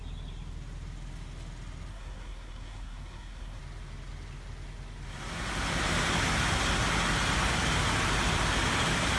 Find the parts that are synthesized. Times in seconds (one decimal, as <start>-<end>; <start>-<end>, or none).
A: 1.9-3.6